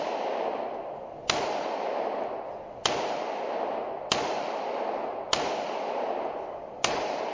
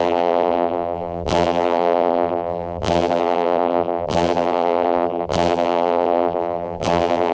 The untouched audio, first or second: first